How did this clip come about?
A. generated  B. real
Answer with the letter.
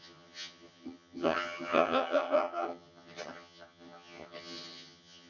A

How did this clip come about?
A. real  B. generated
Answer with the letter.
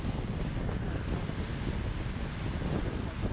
A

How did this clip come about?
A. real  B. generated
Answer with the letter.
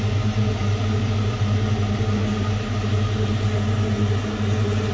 A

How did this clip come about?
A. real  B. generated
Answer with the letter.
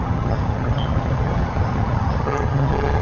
B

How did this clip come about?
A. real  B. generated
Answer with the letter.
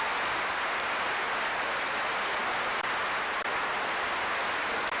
A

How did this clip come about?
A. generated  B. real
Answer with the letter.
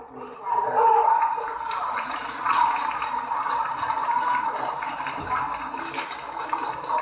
B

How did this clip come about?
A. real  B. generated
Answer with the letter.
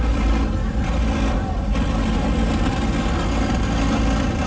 A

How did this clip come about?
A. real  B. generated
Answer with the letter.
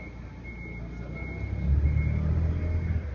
A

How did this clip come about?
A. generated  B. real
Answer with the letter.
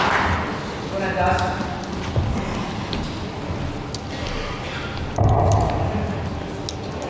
B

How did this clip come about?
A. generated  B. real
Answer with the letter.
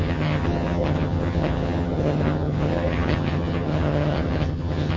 A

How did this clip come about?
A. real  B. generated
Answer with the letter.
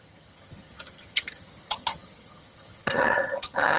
B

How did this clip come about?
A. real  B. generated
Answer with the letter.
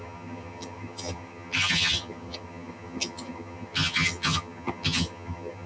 B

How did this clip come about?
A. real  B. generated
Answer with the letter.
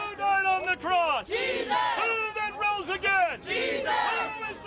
A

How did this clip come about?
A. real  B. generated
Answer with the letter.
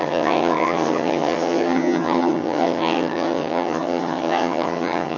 B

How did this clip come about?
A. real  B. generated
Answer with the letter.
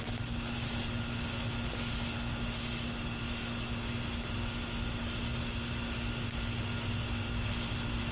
A